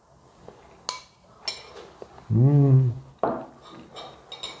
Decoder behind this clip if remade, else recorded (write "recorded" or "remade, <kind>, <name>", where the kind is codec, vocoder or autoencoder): recorded